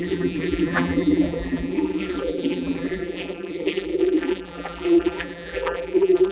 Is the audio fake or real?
fake